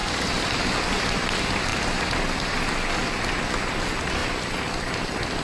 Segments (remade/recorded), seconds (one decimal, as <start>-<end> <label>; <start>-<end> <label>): 0.0-5.4 recorded